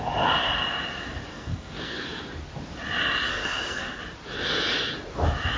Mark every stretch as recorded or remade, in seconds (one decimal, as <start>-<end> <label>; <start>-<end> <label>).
0.0-1.3 recorded; 1.3-2.2 remade; 2.2-3.3 recorded; 3.3-4.0 remade; 4.0-5.6 recorded